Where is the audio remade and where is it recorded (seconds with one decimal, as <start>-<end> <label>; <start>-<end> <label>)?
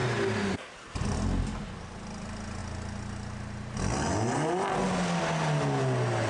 0.0-6.3 recorded